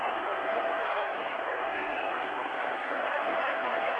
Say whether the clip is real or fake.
fake